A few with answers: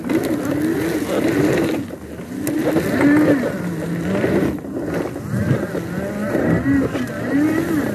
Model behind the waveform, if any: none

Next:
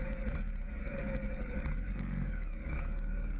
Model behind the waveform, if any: codec, DAC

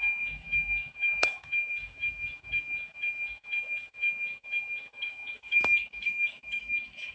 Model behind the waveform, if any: autoencoder, DAC-VAE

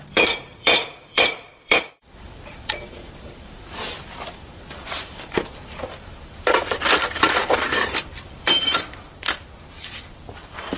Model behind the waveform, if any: vocoder, BigVGAN v2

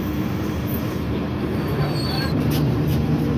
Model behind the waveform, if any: vocoder, BigVGAN v2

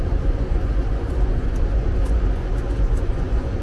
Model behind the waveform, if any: vocoder, Vocos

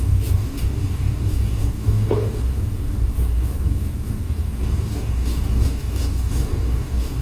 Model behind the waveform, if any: codec, DAC